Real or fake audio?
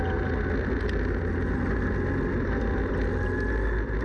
real